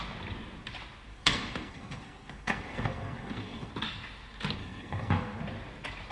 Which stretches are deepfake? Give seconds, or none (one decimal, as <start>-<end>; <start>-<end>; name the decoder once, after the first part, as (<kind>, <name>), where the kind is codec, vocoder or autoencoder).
1.1-3.7 (codec, SNAC); 4.6-5.4